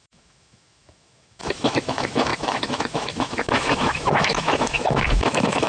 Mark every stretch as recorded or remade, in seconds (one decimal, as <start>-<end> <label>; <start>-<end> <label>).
0.0-5.7 remade